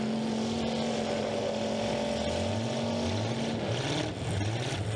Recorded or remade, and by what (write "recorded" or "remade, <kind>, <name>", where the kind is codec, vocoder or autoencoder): recorded